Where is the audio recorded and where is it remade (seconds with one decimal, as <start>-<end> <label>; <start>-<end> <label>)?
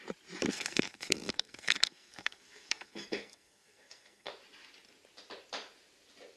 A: 0.0-0.5 recorded; 0.5-4.3 remade; 4.3-6.4 recorded